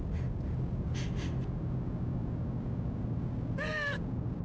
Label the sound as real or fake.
real